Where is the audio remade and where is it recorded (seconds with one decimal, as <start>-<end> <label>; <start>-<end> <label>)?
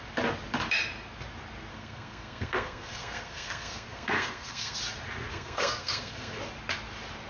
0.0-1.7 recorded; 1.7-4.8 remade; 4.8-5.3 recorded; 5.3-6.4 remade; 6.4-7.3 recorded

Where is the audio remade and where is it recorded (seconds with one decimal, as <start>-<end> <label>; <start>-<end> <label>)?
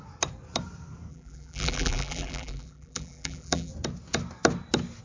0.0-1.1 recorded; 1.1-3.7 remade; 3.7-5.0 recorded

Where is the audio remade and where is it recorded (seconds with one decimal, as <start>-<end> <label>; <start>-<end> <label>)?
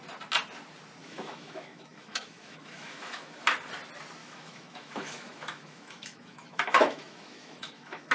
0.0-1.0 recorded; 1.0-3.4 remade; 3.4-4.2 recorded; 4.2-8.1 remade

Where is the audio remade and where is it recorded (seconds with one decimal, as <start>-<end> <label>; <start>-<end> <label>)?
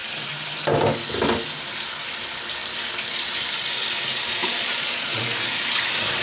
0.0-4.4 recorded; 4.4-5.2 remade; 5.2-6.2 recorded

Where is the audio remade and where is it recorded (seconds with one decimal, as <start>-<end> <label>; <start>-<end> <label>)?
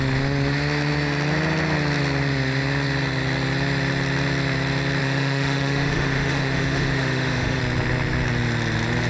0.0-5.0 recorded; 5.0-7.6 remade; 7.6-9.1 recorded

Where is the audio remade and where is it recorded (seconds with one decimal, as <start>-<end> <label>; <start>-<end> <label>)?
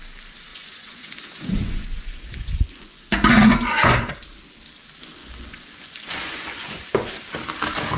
0.0-0.5 recorded; 0.5-4.1 remade; 4.1-5.2 recorded; 5.2-7.1 remade; 7.1-8.0 recorded